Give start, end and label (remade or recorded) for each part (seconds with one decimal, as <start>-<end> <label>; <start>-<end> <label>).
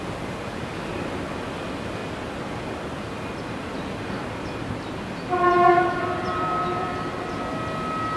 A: 0.0-8.2 recorded